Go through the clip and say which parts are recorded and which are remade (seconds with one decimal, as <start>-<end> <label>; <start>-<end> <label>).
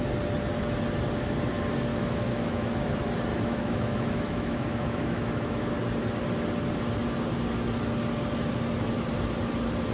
0.0-1.9 recorded; 1.9-2.7 remade; 2.7-3.3 recorded; 3.3-5.7 remade; 5.7-9.9 recorded